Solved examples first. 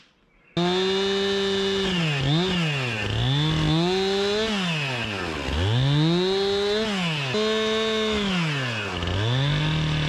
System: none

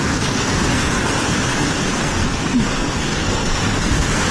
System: codec, SNAC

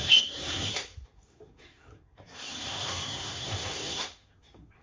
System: codec, SNAC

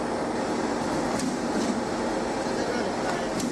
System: none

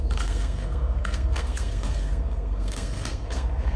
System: codec, SNAC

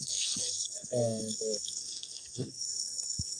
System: codec, SNAC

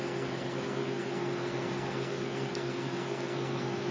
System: codec, SNAC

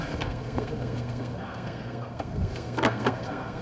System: codec, SNAC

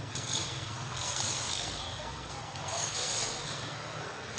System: codec, SNAC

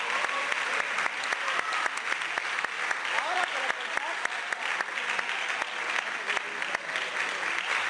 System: none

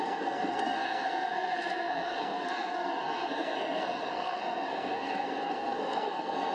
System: codec, SNAC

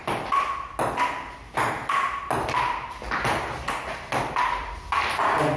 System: none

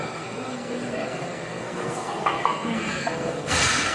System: codec, SNAC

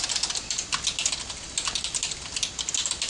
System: none